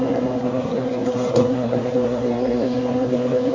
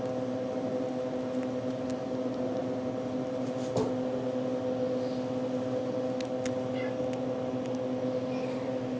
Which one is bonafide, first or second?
second